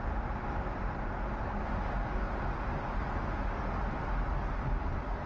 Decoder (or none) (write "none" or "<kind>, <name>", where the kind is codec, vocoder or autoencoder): none